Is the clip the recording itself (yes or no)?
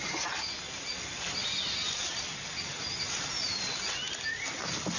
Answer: yes